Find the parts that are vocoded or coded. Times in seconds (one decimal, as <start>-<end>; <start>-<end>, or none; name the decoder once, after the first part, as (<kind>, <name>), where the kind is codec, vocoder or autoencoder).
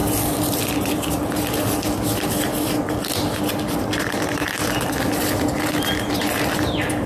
none